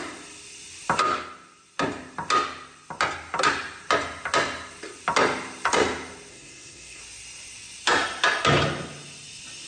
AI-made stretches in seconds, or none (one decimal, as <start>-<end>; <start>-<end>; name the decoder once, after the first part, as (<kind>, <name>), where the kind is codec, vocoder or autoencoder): 6.3-7.0 (codec, SNAC)